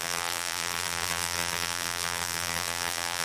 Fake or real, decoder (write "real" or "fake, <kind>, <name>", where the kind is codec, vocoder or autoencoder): fake, vocoder, BigVGAN v2